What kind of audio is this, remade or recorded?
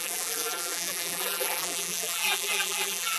remade